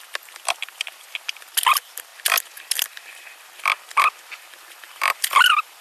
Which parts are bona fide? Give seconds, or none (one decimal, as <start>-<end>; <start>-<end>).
2.1-4.6